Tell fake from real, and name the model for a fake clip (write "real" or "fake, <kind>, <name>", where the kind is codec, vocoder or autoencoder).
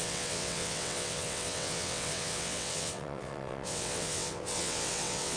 fake, vocoder, WaveNeXt